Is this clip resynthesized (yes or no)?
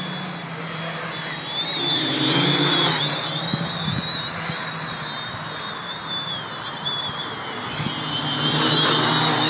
no